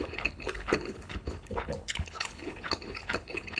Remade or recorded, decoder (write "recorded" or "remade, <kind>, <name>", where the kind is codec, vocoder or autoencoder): remade, codec, HILCodec